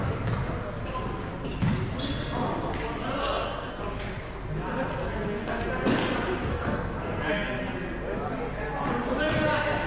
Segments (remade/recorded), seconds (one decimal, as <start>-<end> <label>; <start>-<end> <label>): 0.0-3.2 recorded; 3.2-3.8 remade; 3.8-5.0 recorded; 5.0-5.6 remade; 5.6-6.5 recorded; 6.5-7.6 remade; 7.6-9.9 recorded